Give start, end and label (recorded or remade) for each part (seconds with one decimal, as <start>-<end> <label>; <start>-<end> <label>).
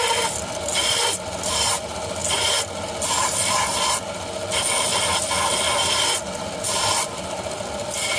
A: 0.0-8.2 recorded